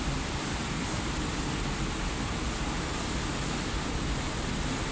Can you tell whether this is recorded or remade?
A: recorded